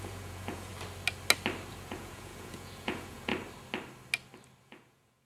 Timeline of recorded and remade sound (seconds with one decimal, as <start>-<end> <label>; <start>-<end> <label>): 0.0-0.7 remade; 0.7-1.7 recorded; 1.7-3.3 remade; 3.3-4.6 recorded; 4.6-5.3 remade